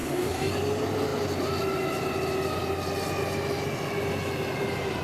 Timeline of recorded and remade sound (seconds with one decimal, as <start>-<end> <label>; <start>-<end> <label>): 0.0-0.5 remade; 0.5-5.0 recorded